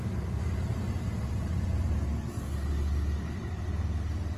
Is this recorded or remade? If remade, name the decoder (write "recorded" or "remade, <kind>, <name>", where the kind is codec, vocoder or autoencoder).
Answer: recorded